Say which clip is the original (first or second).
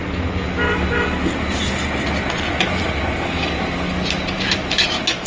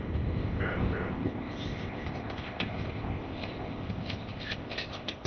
first